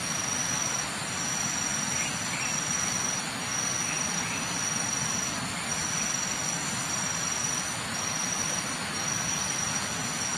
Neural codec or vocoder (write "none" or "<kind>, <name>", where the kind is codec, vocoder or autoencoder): none